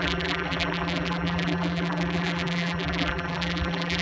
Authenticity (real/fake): fake